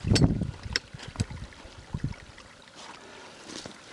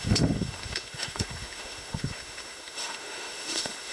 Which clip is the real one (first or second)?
first